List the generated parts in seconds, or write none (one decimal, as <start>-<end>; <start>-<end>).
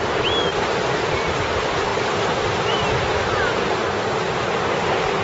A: none